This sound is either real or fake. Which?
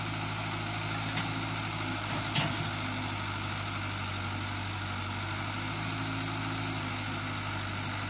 real